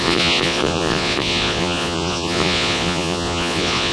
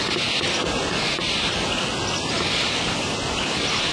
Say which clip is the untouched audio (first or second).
second